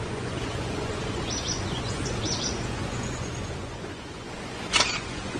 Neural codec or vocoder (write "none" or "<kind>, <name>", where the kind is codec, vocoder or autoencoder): vocoder, Vocos